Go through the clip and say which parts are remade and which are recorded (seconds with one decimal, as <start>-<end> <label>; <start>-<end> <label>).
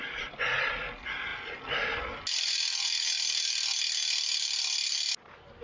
0.0-5.6 recorded